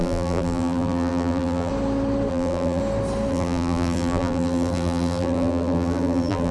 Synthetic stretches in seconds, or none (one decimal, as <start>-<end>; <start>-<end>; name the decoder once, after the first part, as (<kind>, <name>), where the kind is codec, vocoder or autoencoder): 0.0-1.7 (vocoder, BigVGAN v2); 2.3-2.8; 3.3-6.5